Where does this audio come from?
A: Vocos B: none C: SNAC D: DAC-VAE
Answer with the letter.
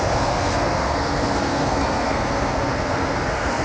C